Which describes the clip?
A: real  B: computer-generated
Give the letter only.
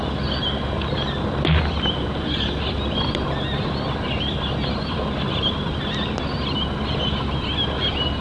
A